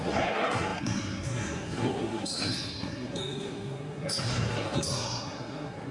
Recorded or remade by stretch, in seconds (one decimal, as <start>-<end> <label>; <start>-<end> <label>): 0.0-5.9 remade